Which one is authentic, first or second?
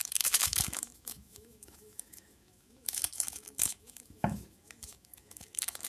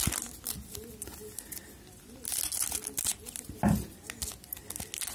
second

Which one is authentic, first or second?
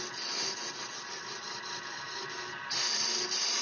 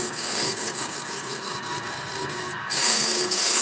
first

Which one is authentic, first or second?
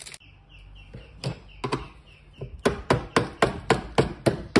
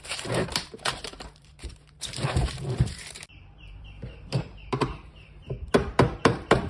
first